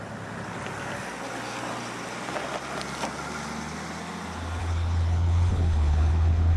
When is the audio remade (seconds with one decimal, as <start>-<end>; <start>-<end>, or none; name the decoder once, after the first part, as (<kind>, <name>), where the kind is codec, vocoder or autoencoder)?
4.6-6.6 (codec, HILCodec)